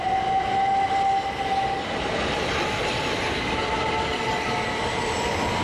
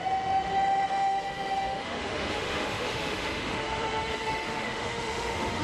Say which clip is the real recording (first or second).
first